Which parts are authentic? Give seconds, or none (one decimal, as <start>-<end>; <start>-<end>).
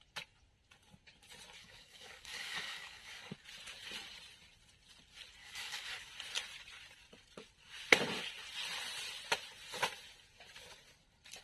0.0-1.6; 3.3-5.4; 6.1-11.4